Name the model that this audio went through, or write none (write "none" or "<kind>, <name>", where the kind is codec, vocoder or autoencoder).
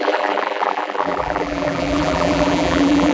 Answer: vocoder, BigVGAN v2